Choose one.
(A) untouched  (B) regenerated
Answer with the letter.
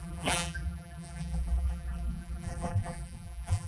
B